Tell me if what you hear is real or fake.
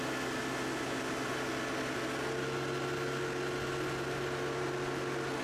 real